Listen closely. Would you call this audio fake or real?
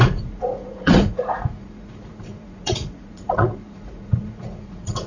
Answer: fake